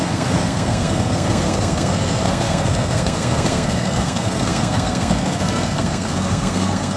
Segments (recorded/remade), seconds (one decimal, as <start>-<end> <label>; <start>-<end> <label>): 0.0-7.0 remade